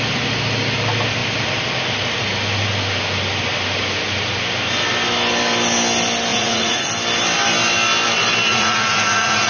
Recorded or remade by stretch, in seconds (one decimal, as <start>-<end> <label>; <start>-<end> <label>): 0.0-6.3 recorded; 6.3-6.9 remade; 6.9-8.5 recorded; 8.5-9.5 remade